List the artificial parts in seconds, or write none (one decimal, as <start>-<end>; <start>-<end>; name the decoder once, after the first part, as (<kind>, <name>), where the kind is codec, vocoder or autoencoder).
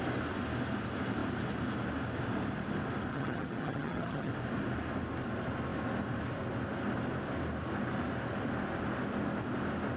3.1-4.3 (vocoder, HiFi-GAN)